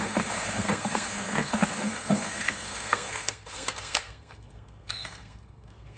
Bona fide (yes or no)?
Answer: no